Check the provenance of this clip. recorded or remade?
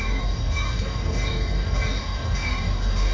remade